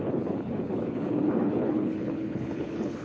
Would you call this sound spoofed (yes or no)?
yes